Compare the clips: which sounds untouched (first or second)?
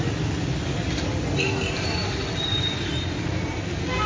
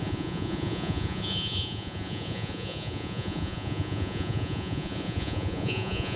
first